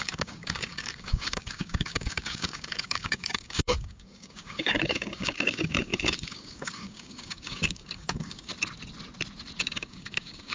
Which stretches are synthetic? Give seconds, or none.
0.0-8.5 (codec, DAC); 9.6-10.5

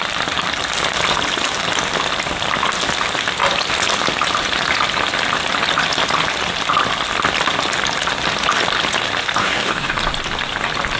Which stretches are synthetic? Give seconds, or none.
9.4-9.9 (codec, DAC)

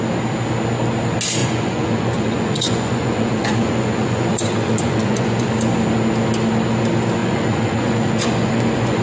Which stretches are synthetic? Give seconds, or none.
1.4-5.5 (vocoder, Vocos); 7.2-9.0

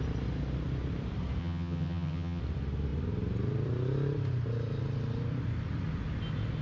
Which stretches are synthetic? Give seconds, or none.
1.4-2.4 (vocoder, HiFi-GAN)

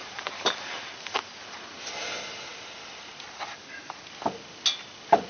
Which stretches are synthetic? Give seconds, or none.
0.0-0.9 (vocoder, BigVGAN v2)

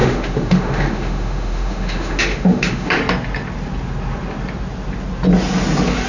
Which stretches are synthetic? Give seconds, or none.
0.0-3.0 (autoencoder, DAC-VAE)